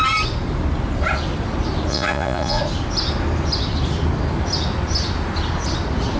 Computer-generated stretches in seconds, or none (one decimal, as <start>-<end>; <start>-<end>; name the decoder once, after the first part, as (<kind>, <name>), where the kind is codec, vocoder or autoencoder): 1.9-2.6 (vocoder, Vocos)